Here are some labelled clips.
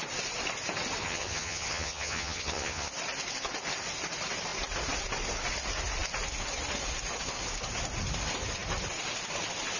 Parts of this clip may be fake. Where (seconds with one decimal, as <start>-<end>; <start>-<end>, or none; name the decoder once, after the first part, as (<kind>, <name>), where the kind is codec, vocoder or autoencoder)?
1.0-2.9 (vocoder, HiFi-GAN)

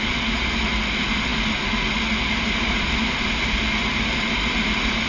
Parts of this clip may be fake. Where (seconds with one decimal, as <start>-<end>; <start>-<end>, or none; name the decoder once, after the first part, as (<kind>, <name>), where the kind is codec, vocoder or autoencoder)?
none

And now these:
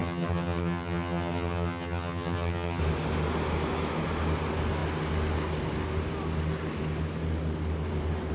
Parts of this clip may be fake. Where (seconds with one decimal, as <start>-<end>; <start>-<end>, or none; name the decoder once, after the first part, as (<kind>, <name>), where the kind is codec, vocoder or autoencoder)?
0.0-2.8 (vocoder, HiFi-GAN)

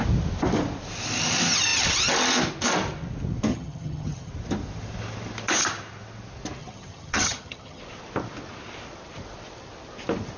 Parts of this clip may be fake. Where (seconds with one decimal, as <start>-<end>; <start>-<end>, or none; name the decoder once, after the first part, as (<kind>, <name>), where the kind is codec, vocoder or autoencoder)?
3.5-4.3 (vocoder, HiFi-GAN); 6.6-7.8